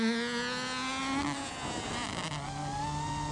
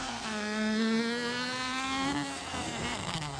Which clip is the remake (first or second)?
second